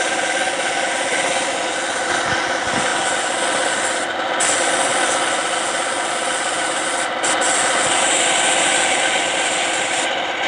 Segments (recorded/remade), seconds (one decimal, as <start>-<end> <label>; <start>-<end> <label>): 0.0-10.5 recorded